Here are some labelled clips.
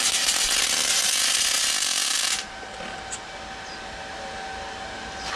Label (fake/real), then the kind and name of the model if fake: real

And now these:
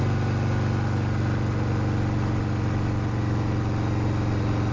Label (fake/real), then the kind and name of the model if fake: real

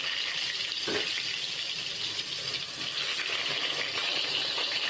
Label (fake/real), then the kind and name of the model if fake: real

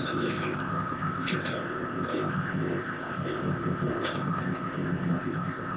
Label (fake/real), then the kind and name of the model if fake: fake, codec, ZipCodec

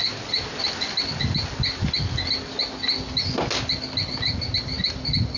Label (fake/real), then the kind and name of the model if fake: real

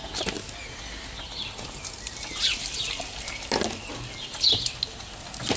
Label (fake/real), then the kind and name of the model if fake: real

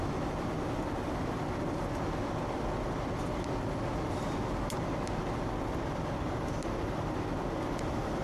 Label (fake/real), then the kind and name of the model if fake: real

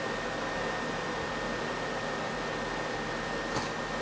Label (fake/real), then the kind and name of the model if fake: real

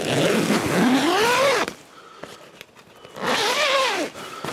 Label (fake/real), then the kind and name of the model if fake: real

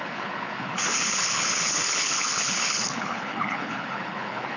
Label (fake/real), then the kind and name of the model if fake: fake, codec, HILCodec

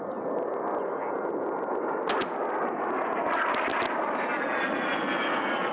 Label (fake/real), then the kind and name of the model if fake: real